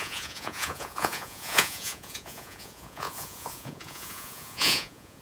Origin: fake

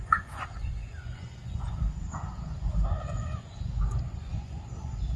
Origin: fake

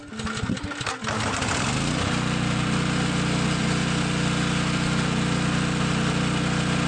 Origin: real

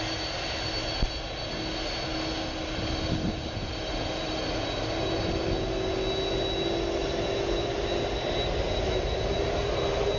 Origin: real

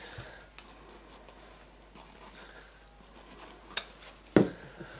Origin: real